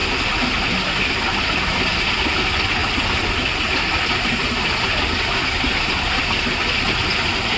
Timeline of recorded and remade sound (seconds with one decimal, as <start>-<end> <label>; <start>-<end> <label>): 0.0-7.6 recorded